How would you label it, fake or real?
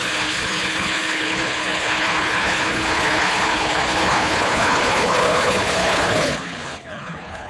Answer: fake